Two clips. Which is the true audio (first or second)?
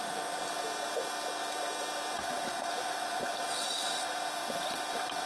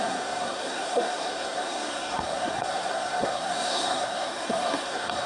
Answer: first